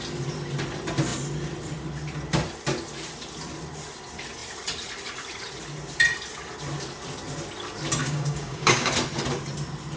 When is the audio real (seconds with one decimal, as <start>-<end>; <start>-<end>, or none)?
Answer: 0.0-8.0; 8.9-10.0